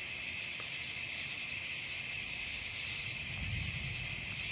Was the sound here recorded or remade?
recorded